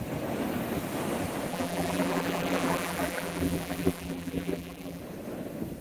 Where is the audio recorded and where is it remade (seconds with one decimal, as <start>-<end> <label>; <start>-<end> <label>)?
0.0-1.5 recorded; 1.5-5.0 remade; 5.0-5.8 recorded